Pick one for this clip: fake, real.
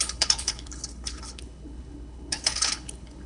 fake